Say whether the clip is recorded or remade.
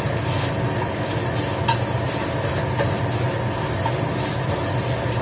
recorded